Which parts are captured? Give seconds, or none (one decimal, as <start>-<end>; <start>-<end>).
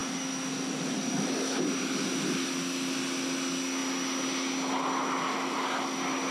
0.0-6.3